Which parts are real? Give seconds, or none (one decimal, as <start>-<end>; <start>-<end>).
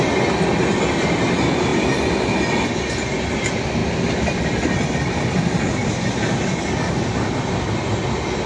0.0-8.5